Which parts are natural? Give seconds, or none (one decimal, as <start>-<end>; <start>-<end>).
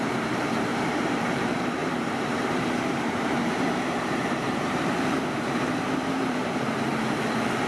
6.9-7.7